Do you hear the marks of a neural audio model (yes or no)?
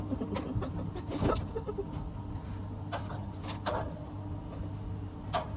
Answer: no